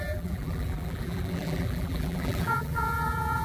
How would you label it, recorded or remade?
remade